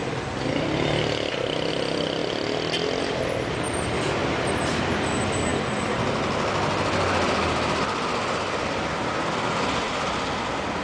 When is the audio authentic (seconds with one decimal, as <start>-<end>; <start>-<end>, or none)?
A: 0.0-4.2; 4.8-10.8